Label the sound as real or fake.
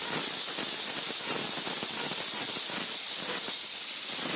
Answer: real